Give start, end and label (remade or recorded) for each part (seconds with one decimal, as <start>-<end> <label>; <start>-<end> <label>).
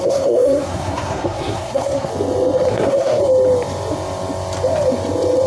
0.0-2.1 remade; 2.1-2.7 recorded; 2.7-3.2 remade; 3.2-5.5 recorded